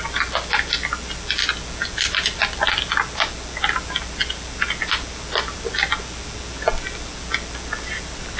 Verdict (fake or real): real